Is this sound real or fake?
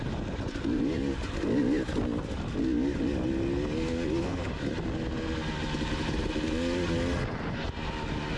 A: real